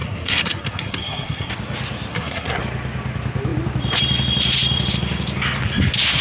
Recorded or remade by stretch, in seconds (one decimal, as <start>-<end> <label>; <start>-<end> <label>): 0.0-1.5 remade; 1.5-2.1 recorded; 2.1-2.6 remade; 2.6-6.2 recorded